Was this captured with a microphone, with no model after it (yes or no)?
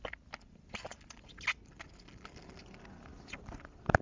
yes